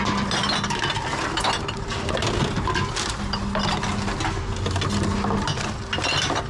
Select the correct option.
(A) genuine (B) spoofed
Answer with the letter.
A